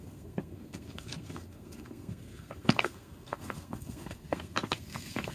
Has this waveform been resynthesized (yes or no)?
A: yes